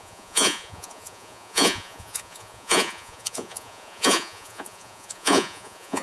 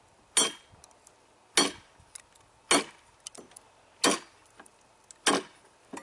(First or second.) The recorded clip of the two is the second